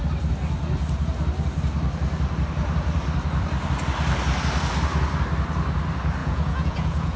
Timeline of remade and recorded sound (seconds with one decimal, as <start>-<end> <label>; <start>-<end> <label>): 0.0-6.2 recorded; 6.2-7.2 remade